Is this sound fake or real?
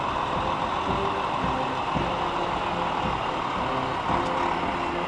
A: real